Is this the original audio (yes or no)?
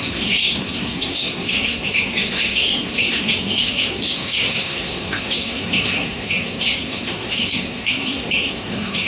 no